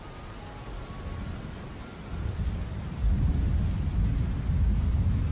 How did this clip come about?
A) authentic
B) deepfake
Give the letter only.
A